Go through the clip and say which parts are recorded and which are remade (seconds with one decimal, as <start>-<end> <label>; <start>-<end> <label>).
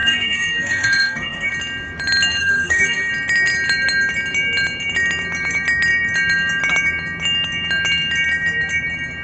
0.0-1.5 remade; 1.5-2.4 recorded; 2.4-3.1 remade; 3.1-9.2 recorded